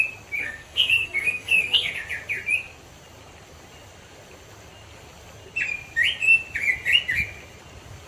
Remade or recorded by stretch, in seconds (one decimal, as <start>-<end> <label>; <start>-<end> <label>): 0.0-0.4 recorded; 0.4-1.9 remade; 1.9-8.1 recorded